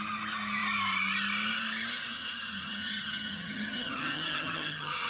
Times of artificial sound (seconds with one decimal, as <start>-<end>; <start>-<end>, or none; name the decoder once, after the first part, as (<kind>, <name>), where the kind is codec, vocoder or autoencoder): 2.1-5.1 (vocoder, HiFi-GAN)